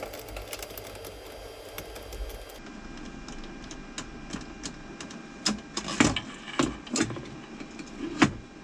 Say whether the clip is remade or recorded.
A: recorded